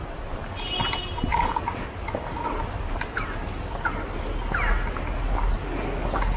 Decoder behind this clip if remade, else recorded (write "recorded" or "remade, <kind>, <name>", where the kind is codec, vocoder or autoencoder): recorded